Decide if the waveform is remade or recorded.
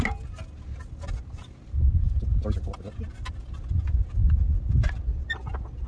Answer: recorded